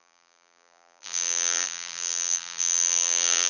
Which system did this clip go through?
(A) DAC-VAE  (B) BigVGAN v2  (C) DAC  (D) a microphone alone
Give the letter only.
B